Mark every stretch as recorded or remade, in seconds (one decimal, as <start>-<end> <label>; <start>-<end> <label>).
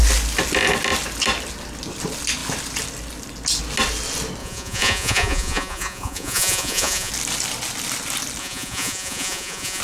0.0-4.4 recorded; 4.4-7.1 remade; 7.1-8.4 recorded; 8.4-9.8 remade